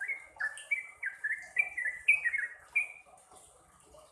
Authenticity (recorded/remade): recorded